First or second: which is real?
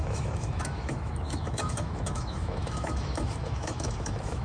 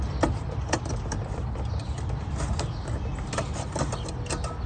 second